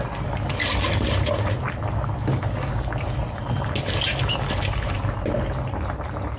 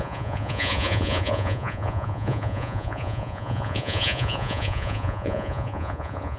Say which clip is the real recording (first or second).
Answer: first